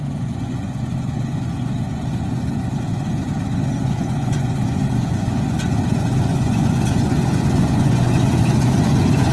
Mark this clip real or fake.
fake